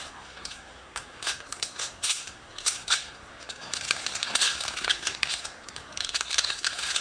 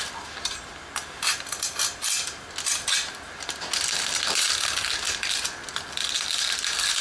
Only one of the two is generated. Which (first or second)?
first